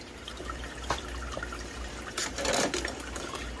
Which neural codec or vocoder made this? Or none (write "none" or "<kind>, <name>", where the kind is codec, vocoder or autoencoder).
vocoder, BigVGAN v2